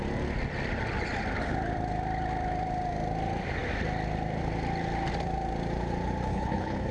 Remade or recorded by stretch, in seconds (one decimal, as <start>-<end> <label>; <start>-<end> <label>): 0.0-6.3 recorded; 6.3-6.9 remade